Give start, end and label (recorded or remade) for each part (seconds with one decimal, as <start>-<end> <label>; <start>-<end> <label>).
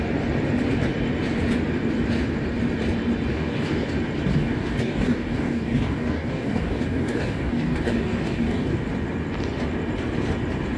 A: 0.0-3.3 recorded; 3.3-3.9 remade; 3.9-4.3 recorded; 4.3-8.7 remade; 8.7-10.8 recorded